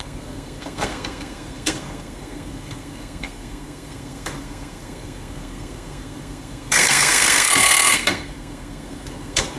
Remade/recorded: remade